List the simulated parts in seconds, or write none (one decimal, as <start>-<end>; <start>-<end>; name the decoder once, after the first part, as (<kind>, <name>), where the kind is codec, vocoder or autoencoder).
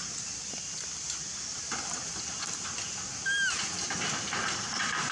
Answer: none